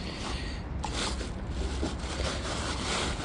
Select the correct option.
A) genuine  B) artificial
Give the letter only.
A